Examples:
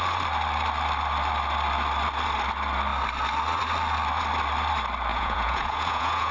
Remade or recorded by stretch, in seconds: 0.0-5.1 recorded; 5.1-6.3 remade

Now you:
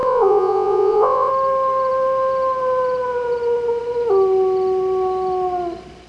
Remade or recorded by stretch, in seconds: 0.0-1.3 remade; 1.3-6.1 recorded